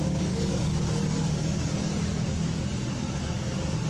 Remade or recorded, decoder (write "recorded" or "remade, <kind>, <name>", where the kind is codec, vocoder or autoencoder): remade, codec, DAC